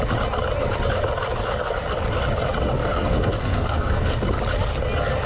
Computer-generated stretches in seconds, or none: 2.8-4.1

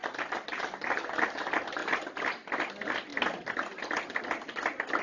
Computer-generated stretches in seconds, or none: none

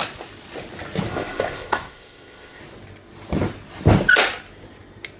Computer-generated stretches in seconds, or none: 1.1-2.6

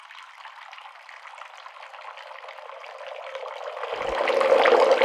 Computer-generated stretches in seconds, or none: 3.4-4.2

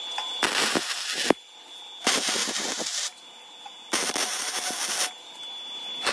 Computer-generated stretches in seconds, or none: none

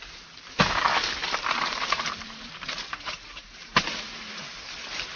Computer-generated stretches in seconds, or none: 1.2-4.3

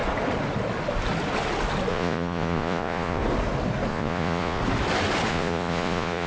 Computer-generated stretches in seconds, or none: 1.9-3.2; 3.9-4.6; 5.3-6.3

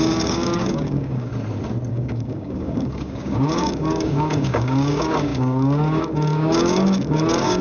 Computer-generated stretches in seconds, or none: 0.0-1.3; 1.9-7.6